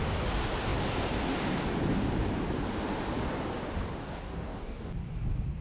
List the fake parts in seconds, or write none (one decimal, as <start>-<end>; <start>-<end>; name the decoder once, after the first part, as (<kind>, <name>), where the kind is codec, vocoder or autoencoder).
4.0-4.9 (codec, DAC)